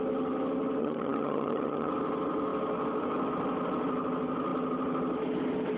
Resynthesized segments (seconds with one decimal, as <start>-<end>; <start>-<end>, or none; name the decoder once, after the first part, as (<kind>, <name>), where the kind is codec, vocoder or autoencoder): 0.8-1.9 (vocoder, HiFi-GAN)